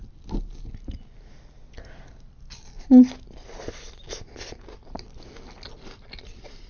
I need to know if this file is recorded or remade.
recorded